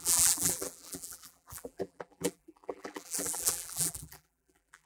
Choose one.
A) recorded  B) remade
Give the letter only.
B